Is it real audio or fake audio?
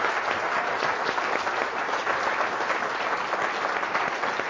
real